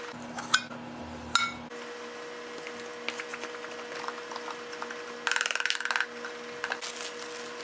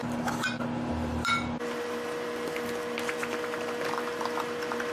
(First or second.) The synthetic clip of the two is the second